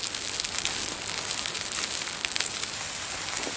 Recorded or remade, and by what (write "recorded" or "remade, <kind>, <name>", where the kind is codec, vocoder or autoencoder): recorded